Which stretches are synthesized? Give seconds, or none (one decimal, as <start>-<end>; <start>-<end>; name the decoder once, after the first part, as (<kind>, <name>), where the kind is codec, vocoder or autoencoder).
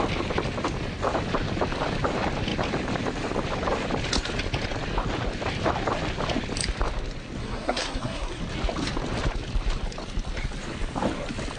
7.4-8.4 (codec, SNAC)